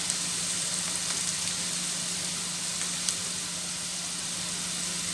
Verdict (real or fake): real